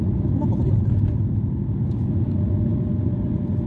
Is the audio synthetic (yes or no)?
no